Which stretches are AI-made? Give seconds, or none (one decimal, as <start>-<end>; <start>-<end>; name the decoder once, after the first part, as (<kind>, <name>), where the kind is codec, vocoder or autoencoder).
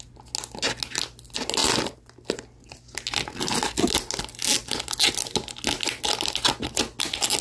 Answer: none